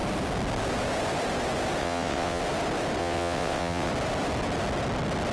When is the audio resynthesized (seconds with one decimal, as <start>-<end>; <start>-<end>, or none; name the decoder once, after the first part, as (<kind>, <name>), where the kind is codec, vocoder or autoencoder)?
1.8-2.4 (vocoder, WaveNeXt); 3.0-3.9